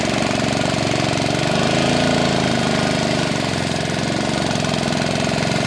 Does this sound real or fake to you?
real